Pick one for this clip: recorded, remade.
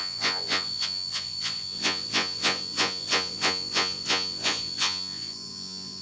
remade